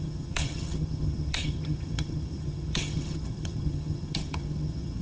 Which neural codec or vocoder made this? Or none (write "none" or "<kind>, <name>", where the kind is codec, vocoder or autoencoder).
vocoder, HiFi-GAN